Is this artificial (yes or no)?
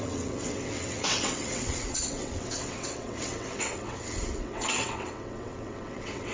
yes